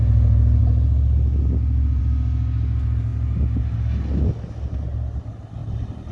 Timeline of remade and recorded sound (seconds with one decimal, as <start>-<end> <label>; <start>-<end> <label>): 0.0-6.1 recorded